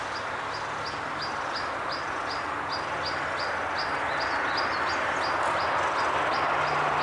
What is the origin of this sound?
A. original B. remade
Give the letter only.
A